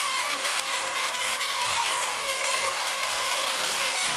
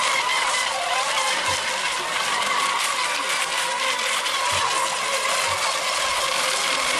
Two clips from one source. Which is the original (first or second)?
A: second